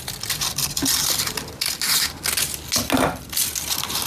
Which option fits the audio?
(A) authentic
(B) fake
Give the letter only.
A